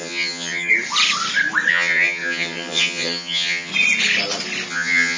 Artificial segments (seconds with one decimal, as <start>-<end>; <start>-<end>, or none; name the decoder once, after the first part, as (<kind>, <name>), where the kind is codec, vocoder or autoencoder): 0.0-0.7 (vocoder, HiFi-GAN); 1.7-3.7; 4.7-5.2